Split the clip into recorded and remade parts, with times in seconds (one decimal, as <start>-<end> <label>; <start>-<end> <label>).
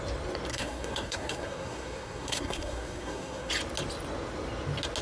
0.0-0.5 recorded; 0.5-3.5 remade; 3.5-5.0 recorded